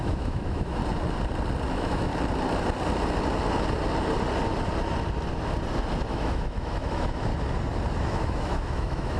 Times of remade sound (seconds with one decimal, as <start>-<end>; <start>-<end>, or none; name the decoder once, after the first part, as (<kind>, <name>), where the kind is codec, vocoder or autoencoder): 0.0-0.8 (autoencoder, DAC-VAE); 1.7-2.1; 6.1-7.3; 8.0-9.2